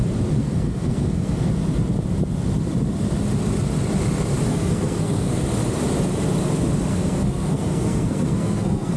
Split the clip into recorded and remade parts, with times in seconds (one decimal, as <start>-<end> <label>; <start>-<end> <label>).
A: 0.0-0.4 recorded; 0.4-1.5 remade; 1.5-4.5 recorded; 4.5-5.4 remade; 5.4-6.9 recorded; 6.9-9.0 remade